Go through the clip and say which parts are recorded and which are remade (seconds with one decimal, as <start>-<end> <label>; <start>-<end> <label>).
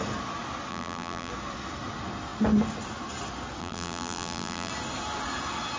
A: 0.0-0.7 recorded; 0.7-1.3 remade; 1.3-3.6 recorded; 3.6-4.7 remade; 4.7-5.8 recorded